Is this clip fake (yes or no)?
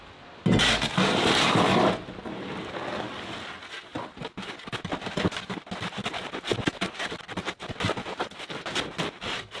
no